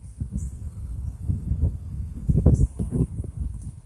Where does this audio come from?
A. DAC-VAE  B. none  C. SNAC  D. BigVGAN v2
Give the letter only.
C